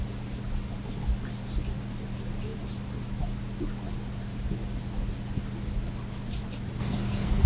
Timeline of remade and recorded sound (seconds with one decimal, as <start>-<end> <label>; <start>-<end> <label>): 0.0-6.8 recorded; 6.8-7.5 remade